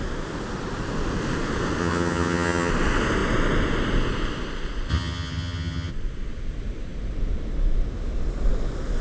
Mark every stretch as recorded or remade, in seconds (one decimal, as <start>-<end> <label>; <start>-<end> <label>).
0.0-1.8 recorded; 1.8-2.7 remade; 2.7-4.9 recorded; 4.9-5.9 remade; 5.9-9.0 recorded